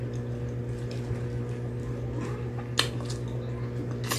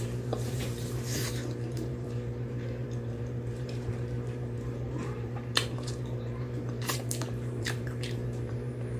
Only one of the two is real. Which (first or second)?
first